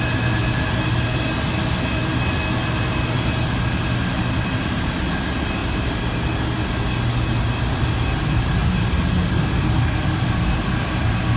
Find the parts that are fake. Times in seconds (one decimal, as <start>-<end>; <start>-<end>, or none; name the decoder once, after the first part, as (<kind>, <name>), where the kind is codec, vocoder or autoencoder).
8.6-10.7 (vocoder, BigVGAN v2)